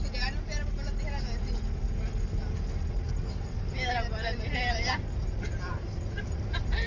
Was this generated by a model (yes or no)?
no